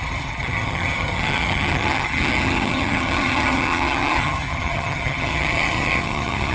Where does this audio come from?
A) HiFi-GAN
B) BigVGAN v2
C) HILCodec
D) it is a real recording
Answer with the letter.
A